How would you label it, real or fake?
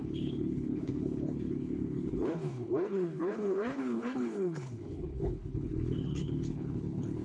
fake